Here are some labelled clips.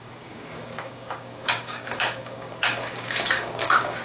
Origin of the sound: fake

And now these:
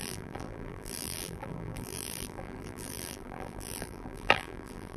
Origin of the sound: fake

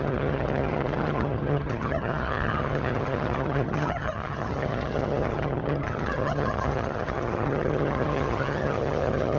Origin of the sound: fake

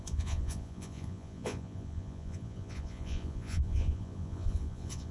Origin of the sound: fake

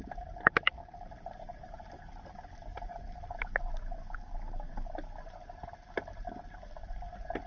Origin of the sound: real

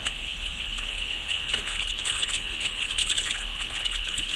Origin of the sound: fake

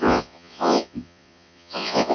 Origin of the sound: fake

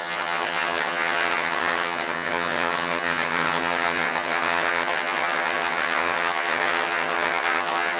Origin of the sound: fake